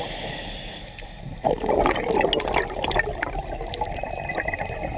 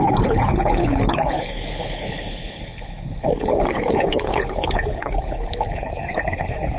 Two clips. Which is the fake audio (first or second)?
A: second